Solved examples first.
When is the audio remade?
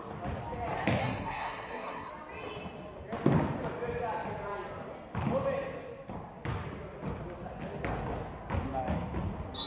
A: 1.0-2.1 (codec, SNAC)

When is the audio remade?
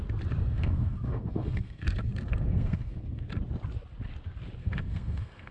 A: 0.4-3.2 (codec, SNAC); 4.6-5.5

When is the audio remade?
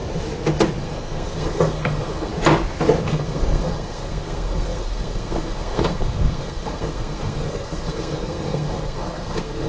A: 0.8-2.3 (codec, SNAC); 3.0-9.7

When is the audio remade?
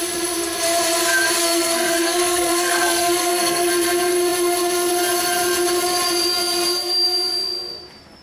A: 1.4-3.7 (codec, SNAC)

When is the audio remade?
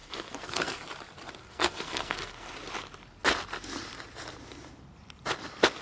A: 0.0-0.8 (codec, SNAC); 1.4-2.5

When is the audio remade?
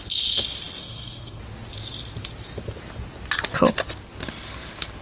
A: 0.8-1.4 (codec, SNAC)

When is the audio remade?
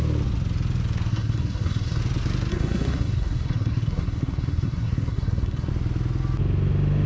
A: 1.1-2.0 (codec, SNAC); 2.5-5.7